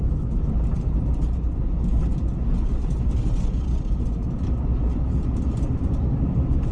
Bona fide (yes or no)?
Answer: yes